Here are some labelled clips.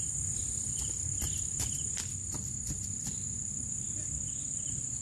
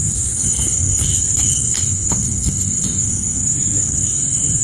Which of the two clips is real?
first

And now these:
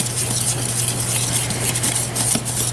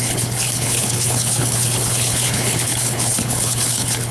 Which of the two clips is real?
first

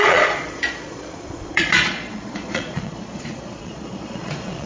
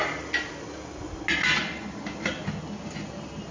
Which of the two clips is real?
second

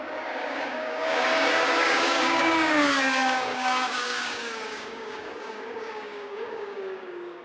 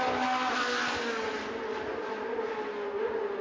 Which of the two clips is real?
second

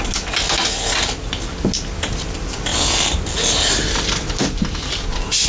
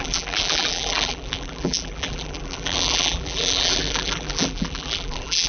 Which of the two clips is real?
first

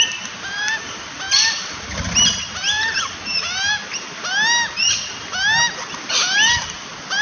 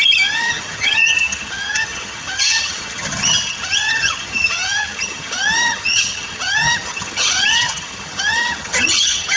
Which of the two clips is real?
first